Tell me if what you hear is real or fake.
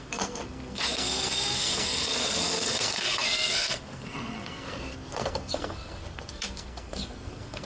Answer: fake